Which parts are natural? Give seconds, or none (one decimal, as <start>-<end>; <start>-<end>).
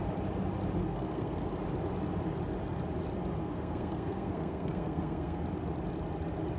0.0-0.8; 1.4-3.4; 5.4-6.6